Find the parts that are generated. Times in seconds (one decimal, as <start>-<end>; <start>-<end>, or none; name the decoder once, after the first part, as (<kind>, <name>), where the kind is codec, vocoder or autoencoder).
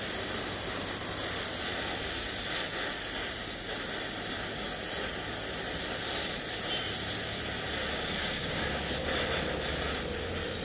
8.2-8.9 (codec, DAC)